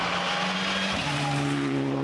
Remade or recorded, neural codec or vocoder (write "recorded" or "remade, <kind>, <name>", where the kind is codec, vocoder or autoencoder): recorded